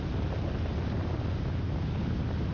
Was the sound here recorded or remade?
recorded